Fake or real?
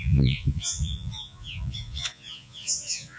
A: fake